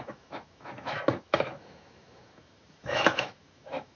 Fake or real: fake